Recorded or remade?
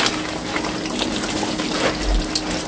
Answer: recorded